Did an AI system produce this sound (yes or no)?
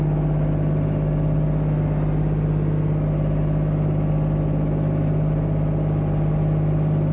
no